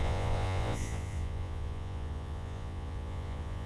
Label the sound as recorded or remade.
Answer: remade